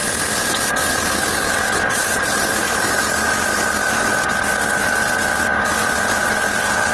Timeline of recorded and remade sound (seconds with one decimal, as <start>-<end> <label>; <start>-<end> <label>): 0.0-6.9 recorded

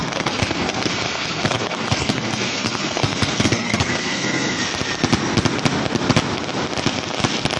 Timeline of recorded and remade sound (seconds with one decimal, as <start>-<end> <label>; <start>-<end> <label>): 0.0-4.6 remade; 4.6-7.6 recorded

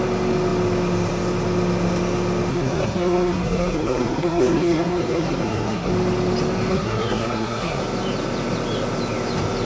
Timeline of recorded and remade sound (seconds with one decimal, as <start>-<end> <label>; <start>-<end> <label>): 0.0-2.5 recorded; 2.5-5.9 remade; 5.9-6.7 recorded; 6.7-7.8 remade; 7.8-9.6 recorded

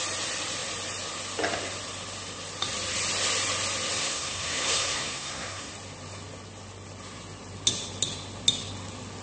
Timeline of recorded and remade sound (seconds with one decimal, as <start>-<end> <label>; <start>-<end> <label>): 0.0-4.0 recorded; 4.0-5.7 remade; 5.7-9.2 recorded

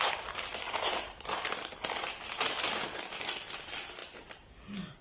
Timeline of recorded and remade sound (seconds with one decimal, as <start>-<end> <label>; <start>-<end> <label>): 0.0-5.0 recorded

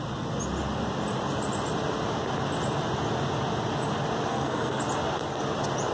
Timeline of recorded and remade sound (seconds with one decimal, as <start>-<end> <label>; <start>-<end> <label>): 0.0-4.3 recorded; 4.3-4.8 remade; 4.8-5.9 recorded

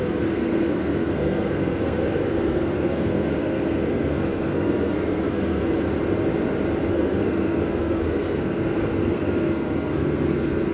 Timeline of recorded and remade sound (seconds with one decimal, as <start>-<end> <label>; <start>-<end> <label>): 0.0-5.6 remade; 5.6-6.9 recorded; 6.9-10.7 remade